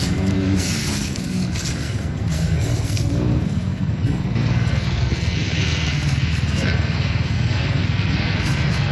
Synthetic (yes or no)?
yes